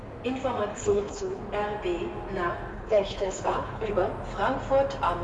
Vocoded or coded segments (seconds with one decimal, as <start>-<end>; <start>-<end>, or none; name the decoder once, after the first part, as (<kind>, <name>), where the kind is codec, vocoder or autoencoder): 0.7-1.4 (codec, HILCodec); 2.7-3.9